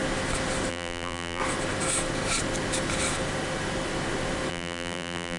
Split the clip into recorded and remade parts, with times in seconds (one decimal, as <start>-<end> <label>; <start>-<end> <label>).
0.0-0.7 recorded; 0.7-1.4 remade; 1.4-4.5 recorded; 4.5-5.4 remade